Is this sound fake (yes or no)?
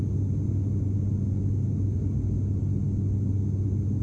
no